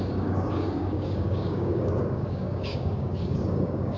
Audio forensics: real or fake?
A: fake